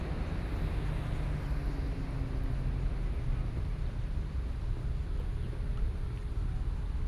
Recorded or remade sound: recorded